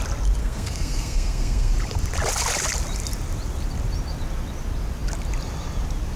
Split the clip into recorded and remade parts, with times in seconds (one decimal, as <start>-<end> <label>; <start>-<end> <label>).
0.0-0.4 recorded; 0.4-1.7 remade; 1.7-6.2 recorded